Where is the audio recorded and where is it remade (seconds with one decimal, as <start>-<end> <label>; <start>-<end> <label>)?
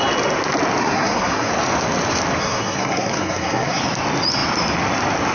0.0-0.8 recorded; 0.8-1.5 remade; 1.5-2.4 recorded; 2.4-3.8 remade; 3.8-5.3 recorded